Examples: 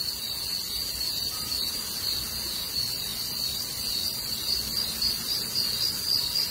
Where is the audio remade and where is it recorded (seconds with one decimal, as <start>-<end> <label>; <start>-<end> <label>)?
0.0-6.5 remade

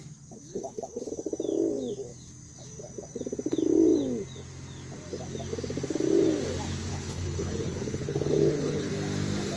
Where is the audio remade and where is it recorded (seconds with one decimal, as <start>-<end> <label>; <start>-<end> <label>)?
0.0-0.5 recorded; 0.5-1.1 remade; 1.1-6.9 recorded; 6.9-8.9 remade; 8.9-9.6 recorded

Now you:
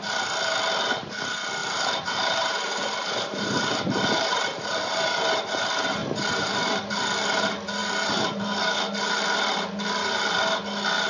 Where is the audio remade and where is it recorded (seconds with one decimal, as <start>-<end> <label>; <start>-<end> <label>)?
0.0-1.6 recorded; 1.6-5.6 remade; 5.6-6.0 recorded; 6.0-6.9 remade; 6.9-7.8 recorded; 7.8-8.4 remade; 8.4-11.1 recorded

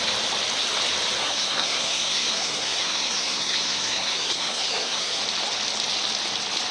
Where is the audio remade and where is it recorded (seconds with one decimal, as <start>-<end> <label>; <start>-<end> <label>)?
0.0-1.2 recorded; 1.2-5.2 remade; 5.2-6.7 recorded

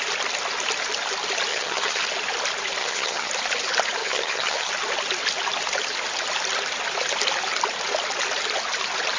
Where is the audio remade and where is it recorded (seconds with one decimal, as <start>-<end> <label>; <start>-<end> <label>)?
0.0-1.5 recorded; 1.5-2.0 remade; 2.0-2.8 recorded; 2.8-3.3 remade; 3.3-4.0 recorded; 4.0-4.7 remade; 4.7-9.2 recorded

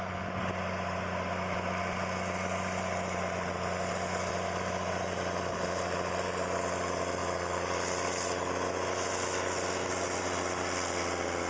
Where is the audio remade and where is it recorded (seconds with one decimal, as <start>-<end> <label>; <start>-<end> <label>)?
0.0-11.5 recorded